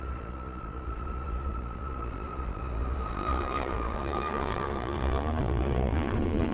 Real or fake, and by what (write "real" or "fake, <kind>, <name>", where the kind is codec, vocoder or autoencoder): fake, vocoder, Vocos